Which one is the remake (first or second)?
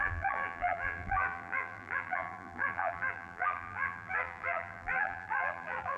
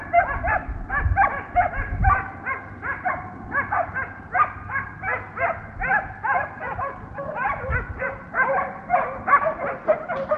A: first